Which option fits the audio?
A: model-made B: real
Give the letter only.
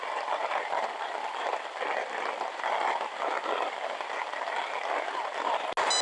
B